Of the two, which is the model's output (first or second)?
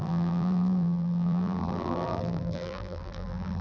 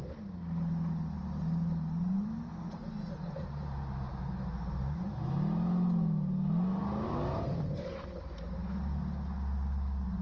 first